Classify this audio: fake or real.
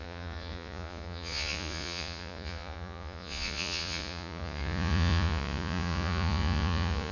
fake